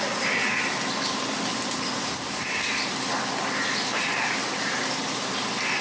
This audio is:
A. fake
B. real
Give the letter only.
B